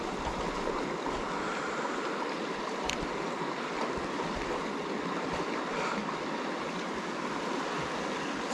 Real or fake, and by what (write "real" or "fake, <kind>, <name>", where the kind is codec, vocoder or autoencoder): real